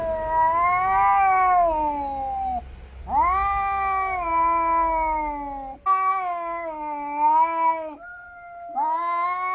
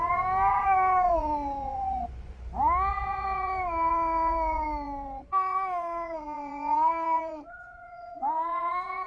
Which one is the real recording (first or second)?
first